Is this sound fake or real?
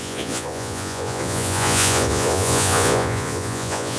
fake